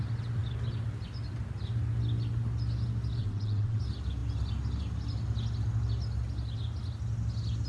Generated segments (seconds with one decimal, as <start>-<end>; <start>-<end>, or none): 3.2-3.8